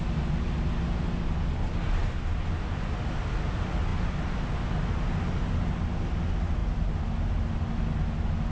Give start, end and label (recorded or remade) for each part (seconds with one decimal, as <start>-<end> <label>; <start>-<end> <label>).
0.0-8.5 recorded